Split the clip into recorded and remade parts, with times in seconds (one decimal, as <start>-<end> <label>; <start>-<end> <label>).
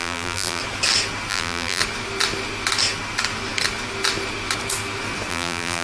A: 0.0-0.6 remade; 0.6-1.3 recorded; 1.3-1.8 remade; 1.8-5.3 recorded; 5.3-5.8 remade